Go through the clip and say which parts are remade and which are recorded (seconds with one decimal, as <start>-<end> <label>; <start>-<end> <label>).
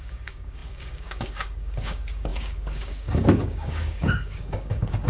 0.0-5.1 remade